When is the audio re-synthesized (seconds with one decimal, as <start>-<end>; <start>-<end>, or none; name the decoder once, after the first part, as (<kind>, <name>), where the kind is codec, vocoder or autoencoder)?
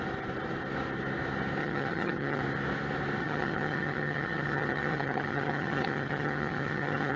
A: 1.6-2.4 (vocoder, HiFi-GAN); 3.2-7.2